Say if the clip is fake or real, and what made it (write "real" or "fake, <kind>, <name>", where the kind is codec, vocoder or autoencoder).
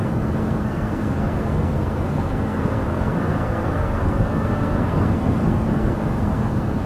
fake, codec, SNAC